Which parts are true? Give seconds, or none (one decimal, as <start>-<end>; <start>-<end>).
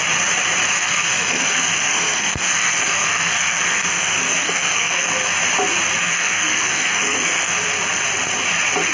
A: 0.0-0.7; 5.1-6.0; 7.6-8.9